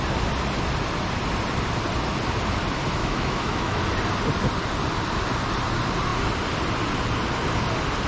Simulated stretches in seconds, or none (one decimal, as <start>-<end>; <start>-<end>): 3.0-3.8